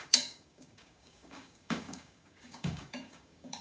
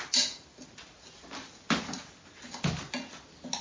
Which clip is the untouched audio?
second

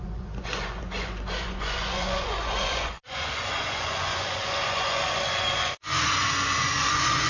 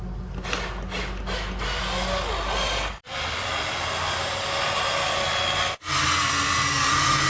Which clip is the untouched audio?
second